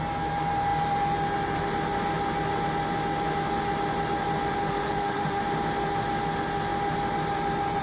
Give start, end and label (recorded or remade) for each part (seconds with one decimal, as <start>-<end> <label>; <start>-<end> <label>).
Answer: 0.0-4.6 recorded; 4.6-5.4 remade; 5.4-7.8 recorded